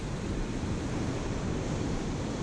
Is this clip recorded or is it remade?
recorded